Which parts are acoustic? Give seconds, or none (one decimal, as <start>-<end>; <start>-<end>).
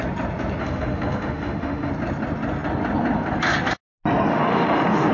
0.0-0.6; 1.9-4.3